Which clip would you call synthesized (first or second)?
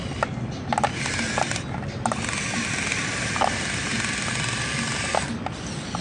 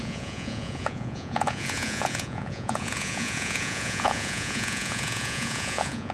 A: second